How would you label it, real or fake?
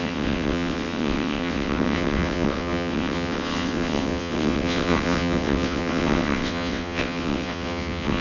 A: fake